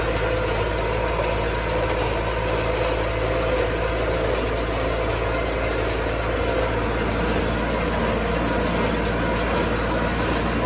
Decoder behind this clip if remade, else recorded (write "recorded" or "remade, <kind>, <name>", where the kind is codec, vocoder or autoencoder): recorded